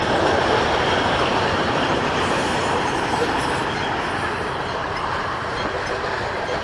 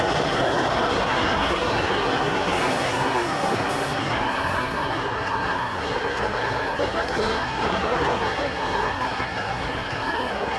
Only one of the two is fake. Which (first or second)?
second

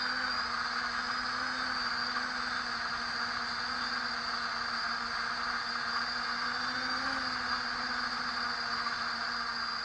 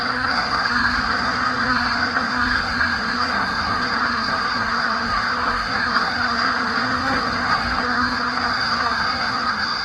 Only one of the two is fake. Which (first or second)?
second